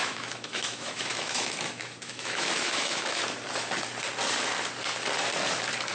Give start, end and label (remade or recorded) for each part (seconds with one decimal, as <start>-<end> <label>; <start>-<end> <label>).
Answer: 0.0-3.2 remade; 3.2-5.9 recorded